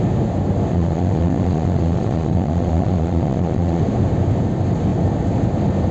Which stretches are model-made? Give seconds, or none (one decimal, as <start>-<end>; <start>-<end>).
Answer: 0.7-3.8